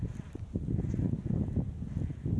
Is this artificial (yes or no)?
no